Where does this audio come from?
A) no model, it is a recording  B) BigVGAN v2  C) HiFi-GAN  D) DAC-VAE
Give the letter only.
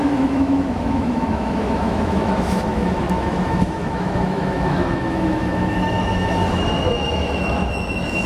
D